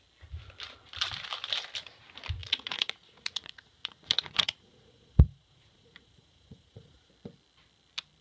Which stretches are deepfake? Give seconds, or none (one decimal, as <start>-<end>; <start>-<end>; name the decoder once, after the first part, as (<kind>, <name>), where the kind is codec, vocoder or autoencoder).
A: 2.4-7.1 (vocoder, Vocos)